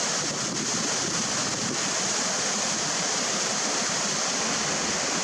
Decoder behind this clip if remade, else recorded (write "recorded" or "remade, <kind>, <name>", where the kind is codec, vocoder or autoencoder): recorded